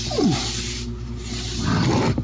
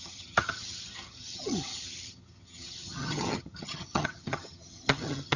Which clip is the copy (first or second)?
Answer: second